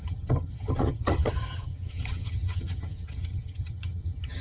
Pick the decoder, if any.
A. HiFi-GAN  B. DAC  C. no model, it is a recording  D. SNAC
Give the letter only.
A